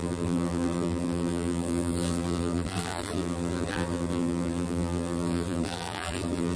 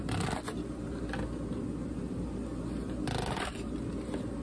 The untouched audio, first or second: second